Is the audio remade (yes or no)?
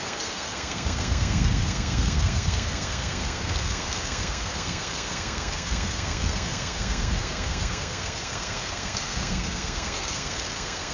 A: yes